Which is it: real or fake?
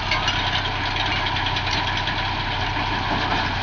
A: real